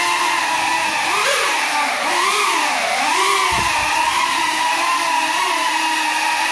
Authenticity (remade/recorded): remade